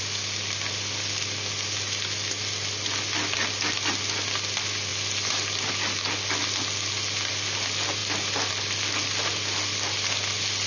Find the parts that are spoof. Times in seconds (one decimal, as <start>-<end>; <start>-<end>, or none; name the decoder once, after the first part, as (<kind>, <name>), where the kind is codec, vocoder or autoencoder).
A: none